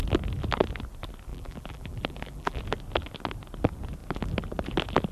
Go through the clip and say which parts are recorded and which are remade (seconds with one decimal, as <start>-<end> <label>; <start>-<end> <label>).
0.0-1.3 recorded; 1.3-2.6 remade; 2.6-5.1 recorded